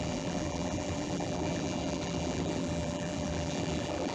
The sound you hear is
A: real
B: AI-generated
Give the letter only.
B